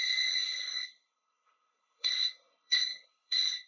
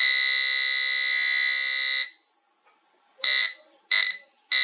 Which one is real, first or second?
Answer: second